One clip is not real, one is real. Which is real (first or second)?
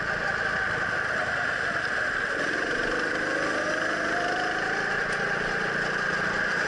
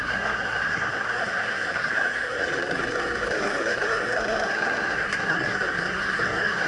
first